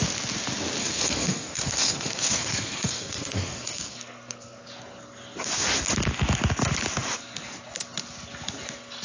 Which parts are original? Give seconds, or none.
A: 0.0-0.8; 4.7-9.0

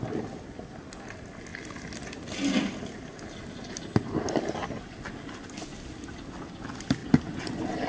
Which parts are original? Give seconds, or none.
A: 0.0-7.0; 7.5-7.9